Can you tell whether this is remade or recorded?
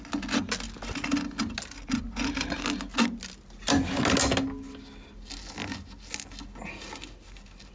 recorded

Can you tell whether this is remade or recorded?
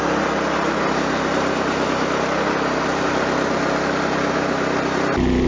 recorded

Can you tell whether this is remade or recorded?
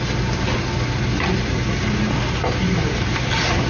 recorded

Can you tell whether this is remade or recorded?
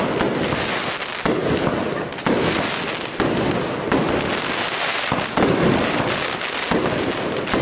recorded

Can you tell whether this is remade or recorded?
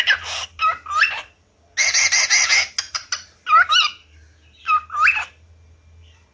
recorded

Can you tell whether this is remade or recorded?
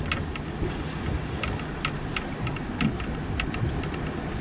recorded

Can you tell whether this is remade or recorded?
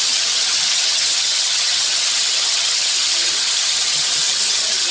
remade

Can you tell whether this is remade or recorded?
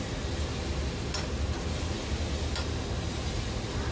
recorded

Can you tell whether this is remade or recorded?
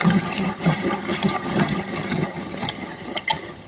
remade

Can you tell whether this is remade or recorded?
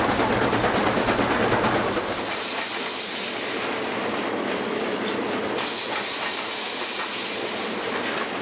recorded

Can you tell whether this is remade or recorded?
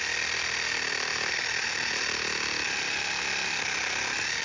recorded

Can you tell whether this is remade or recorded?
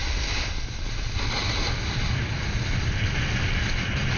recorded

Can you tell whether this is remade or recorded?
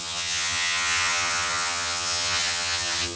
remade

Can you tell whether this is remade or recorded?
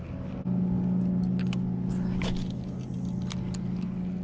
recorded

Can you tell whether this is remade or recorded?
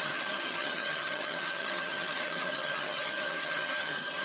remade